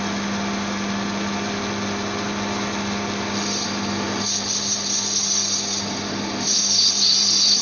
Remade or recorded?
recorded